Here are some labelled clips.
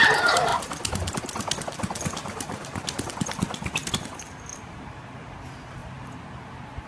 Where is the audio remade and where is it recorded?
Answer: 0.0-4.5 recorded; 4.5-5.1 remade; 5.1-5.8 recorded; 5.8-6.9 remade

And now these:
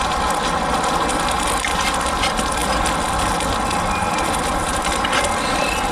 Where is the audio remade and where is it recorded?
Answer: 0.0-2.6 remade; 2.6-4.2 recorded; 4.2-5.9 remade

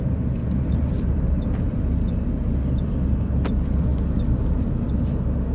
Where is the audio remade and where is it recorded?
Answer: 0.0-0.4 recorded; 0.4-1.8 remade; 1.8-5.5 recorded

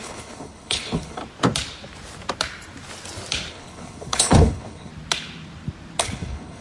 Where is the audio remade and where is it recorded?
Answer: 0.0-1.2 remade; 1.2-3.5 recorded; 3.5-4.9 remade; 4.9-6.0 recorded; 6.0-6.6 remade

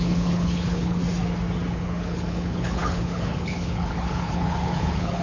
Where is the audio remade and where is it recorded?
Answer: 0.0-1.0 remade; 1.0-1.7 recorded; 1.7-5.2 remade

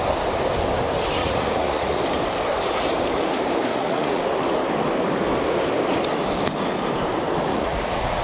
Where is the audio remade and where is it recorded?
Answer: 0.0-1.2 recorded; 1.2-2.0 remade; 2.0-3.7 recorded; 3.7-4.2 remade; 4.2-7.5 recorded; 7.5-8.2 remade

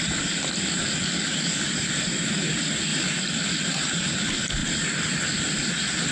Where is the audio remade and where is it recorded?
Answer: 0.0-6.1 recorded

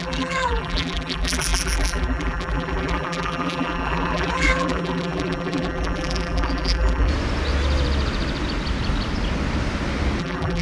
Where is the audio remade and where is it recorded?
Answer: 0.0-7.1 remade; 7.1-10.2 recorded; 10.2-10.6 remade